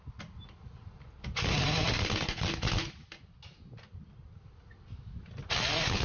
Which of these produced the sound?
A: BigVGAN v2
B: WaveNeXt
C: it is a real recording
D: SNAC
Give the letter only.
C